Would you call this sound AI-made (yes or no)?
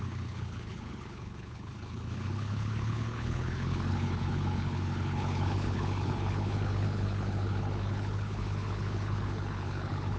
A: yes